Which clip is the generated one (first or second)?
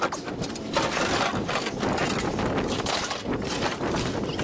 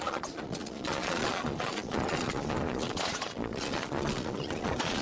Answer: second